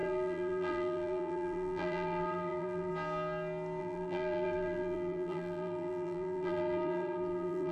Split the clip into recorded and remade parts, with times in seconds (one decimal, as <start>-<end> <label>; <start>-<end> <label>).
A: 0.0-2.9 remade; 2.9-3.8 recorded; 3.8-7.7 remade